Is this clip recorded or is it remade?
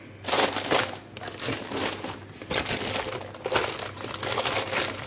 recorded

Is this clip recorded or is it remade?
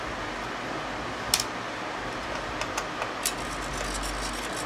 recorded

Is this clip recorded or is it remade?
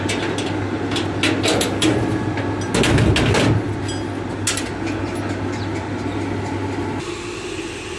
recorded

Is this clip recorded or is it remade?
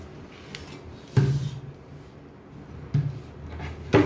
recorded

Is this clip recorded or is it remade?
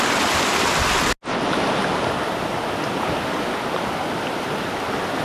recorded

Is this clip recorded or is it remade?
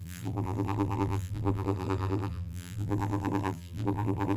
remade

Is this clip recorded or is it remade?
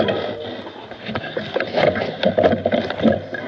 recorded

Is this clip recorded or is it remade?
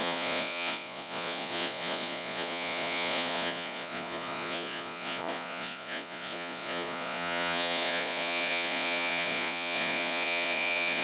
remade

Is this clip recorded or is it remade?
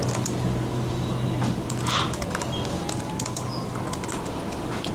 recorded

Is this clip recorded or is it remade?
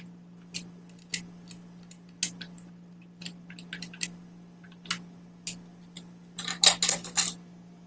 recorded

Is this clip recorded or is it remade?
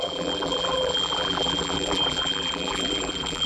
remade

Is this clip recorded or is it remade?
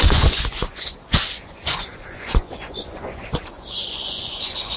remade